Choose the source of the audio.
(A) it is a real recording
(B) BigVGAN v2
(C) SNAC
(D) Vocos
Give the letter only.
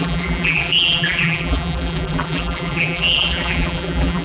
B